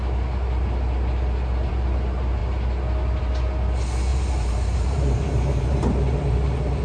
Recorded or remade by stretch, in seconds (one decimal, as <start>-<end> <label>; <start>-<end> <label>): 0.0-4.1 recorded; 4.1-6.8 remade